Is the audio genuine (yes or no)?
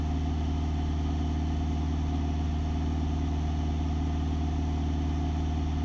yes